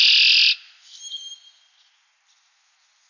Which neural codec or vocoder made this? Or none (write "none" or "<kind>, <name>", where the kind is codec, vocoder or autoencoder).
none